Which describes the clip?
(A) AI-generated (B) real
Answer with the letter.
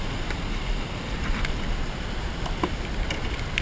B